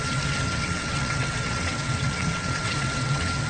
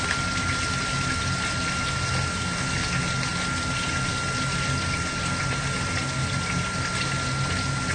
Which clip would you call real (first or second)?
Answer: second